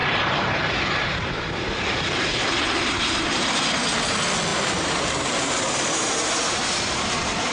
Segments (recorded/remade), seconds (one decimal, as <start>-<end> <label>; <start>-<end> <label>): 0.0-3.5 remade; 3.5-4.5 recorded; 4.5-7.5 remade